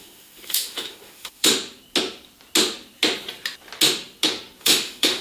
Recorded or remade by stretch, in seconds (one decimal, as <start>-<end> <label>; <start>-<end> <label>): 0.0-1.5 remade; 1.5-4.6 recorded; 4.6-5.2 remade